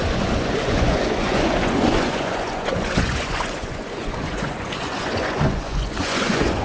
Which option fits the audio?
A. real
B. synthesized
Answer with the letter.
B